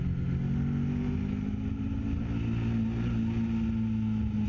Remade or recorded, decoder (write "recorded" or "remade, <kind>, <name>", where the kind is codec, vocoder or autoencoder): recorded